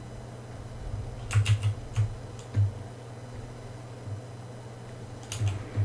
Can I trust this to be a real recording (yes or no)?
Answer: yes